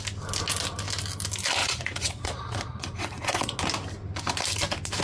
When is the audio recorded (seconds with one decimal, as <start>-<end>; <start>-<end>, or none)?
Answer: 0.0-1.6; 3.6-5.0